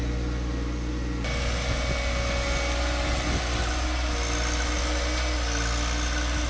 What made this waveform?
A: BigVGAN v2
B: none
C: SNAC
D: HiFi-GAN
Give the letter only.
B